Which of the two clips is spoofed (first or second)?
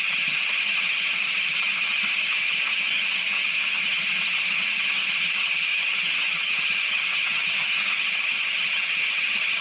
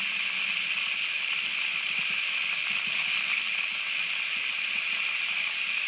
first